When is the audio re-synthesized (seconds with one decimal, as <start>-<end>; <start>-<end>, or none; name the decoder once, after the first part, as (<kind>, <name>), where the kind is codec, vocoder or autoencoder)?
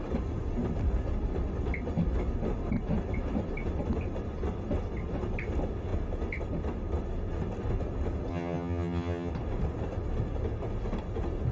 8.3-9.3 (vocoder, HiFi-GAN)